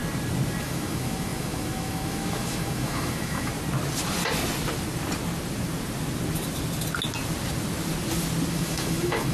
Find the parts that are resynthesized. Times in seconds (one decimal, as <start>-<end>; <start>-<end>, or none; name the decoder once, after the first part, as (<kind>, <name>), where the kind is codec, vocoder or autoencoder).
0.6-3.5 (autoencoder, DAC-VAE); 8.5-9.3